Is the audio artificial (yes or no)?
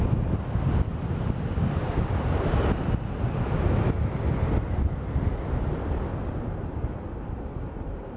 no